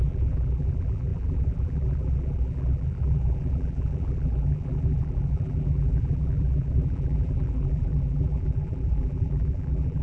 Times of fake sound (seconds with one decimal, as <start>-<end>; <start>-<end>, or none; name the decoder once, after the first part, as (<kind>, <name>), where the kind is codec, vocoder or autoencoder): 0.0-10.0 (vocoder, BigVGAN v2)